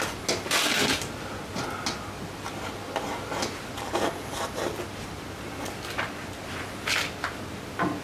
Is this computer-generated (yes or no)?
no